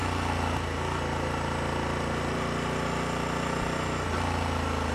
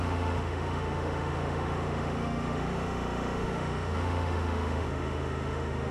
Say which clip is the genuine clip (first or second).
first